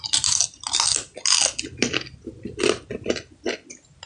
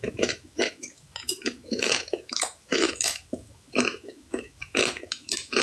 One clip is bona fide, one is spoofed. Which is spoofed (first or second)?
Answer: second